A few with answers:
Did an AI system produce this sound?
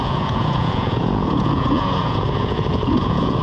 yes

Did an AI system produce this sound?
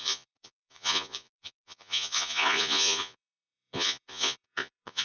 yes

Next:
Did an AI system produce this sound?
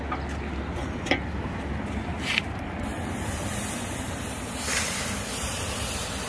no